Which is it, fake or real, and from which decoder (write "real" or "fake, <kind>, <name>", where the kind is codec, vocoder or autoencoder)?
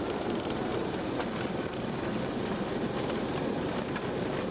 real